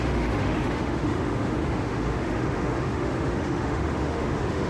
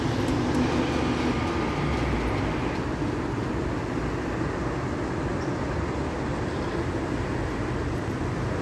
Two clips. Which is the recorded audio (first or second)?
second